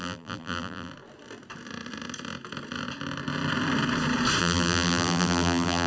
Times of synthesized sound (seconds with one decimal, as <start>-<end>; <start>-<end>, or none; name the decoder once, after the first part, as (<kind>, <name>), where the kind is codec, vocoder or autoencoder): 0.0-0.9 (vocoder, BigVGAN v2); 4.4-5.9